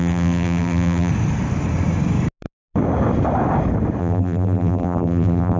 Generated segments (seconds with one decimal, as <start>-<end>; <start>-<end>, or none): 0.0-1.1; 4.0-5.6